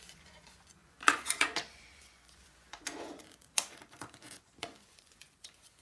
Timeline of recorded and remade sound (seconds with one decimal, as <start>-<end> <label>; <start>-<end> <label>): 0.0-5.8 remade